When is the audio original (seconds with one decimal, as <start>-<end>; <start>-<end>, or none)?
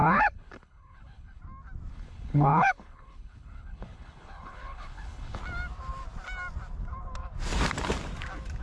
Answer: 1.4-1.9; 5.4-8.6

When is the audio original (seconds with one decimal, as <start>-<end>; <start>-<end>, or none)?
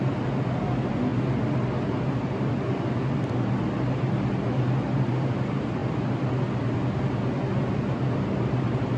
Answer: 0.0-9.0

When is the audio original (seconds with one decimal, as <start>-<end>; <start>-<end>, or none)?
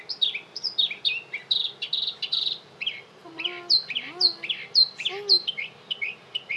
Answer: 0.0-6.6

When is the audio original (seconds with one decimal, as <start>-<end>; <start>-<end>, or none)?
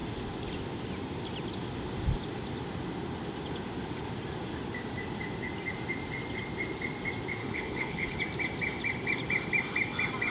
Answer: 0.0-7.4; 8.2-10.3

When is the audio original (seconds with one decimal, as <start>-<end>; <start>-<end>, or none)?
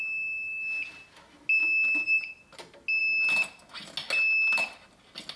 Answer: 0.0-5.4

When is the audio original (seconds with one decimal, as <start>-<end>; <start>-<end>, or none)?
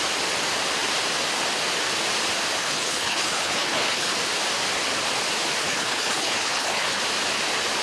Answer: 0.0-2.6; 4.1-5.6; 7.0-7.8